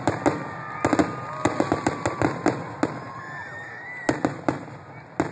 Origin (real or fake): real